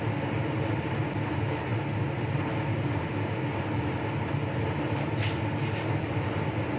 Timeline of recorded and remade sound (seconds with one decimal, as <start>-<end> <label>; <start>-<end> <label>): 0.0-6.8 recorded